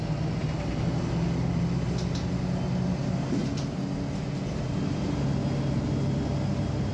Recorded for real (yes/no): yes